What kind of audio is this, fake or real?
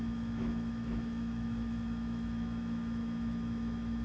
fake